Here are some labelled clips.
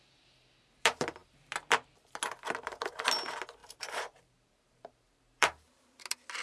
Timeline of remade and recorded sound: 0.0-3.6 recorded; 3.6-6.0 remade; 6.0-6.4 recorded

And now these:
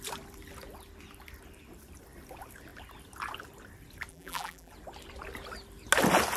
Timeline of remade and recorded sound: 0.0-4.1 recorded; 4.1-4.7 remade; 4.7-6.4 recorded

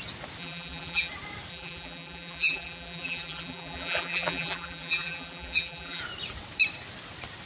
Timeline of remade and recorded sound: 0.0-0.4 recorded; 0.4-1.1 remade; 1.1-1.5 recorded; 1.5-6.0 remade; 6.0-7.5 recorded

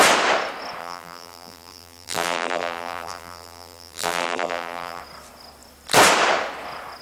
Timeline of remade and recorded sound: 0.0-0.8 recorded; 0.8-5.0 remade; 5.0-7.0 recorded